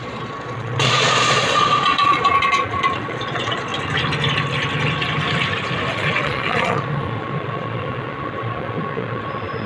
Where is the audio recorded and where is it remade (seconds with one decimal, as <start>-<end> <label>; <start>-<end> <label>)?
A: 0.0-3.7 remade; 3.7-5.9 recorded; 5.9-9.7 remade